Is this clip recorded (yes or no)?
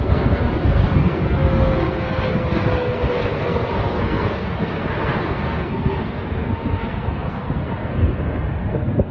no